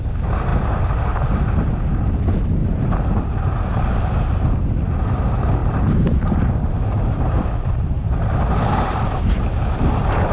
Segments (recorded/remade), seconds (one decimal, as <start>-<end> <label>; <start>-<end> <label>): 0.0-2.6 recorded; 2.6-3.8 remade; 3.8-5.6 recorded; 5.6-9.4 remade; 9.4-10.3 recorded